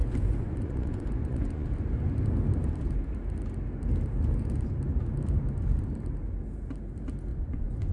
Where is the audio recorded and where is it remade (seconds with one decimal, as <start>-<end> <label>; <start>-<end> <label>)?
0.0-1.7 remade; 1.7-7.3 recorded; 7.3-7.9 remade